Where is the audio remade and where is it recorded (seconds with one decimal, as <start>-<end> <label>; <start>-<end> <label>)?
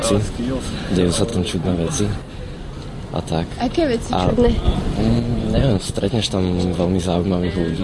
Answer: 0.0-1.3 recorded; 1.3-2.0 remade; 2.0-5.3 recorded; 5.3-6.1 remade; 6.1-7.8 recorded